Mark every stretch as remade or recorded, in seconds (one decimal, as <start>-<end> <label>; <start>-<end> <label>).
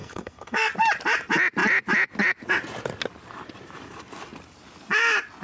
0.0-0.7 remade; 0.7-5.4 recorded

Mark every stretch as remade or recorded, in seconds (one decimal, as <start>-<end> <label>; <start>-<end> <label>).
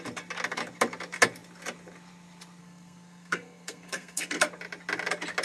0.0-2.6 recorded; 2.6-4.5 remade; 4.5-5.4 recorded